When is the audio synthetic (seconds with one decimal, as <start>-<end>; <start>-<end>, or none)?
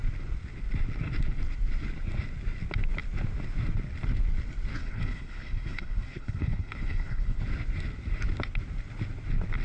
4.8-7.4